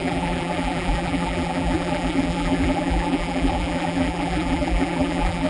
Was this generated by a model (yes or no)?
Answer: yes